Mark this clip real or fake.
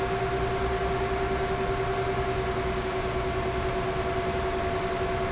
real